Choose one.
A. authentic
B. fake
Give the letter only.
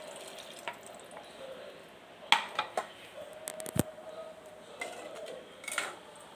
A